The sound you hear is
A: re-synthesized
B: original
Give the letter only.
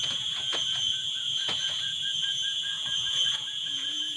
A